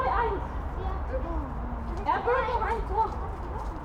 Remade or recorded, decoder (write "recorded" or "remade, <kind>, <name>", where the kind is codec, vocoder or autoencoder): recorded